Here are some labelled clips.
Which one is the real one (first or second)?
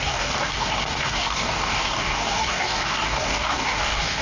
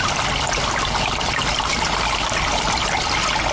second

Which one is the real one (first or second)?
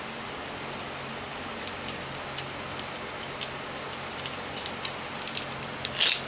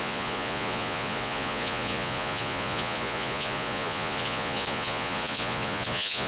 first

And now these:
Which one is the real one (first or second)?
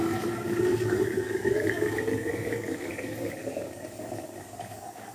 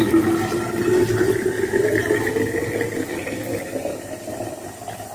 second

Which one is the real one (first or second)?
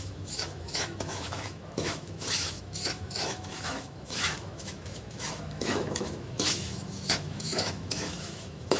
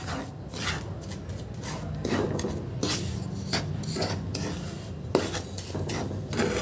second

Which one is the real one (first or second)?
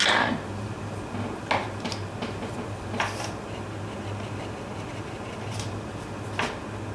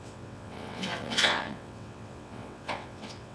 first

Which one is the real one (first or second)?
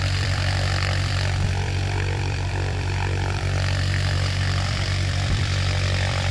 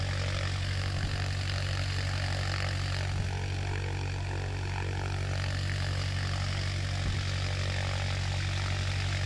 second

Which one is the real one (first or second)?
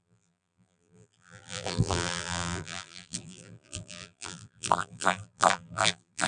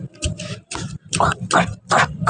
second